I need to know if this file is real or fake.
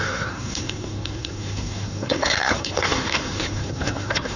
fake